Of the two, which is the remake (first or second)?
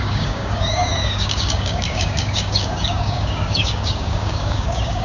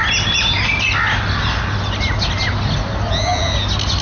first